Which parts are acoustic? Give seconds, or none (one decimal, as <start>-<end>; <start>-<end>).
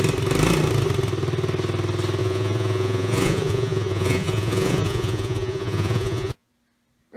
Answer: 0.0-2.2; 6.5-7.2